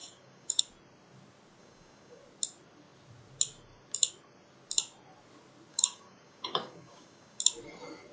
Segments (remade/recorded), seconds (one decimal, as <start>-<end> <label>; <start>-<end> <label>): 0.0-0.6 remade; 0.6-1.6 recorded; 1.6-2.2 remade; 2.2-5.7 recorded; 5.7-7.4 remade; 7.4-8.1 recorded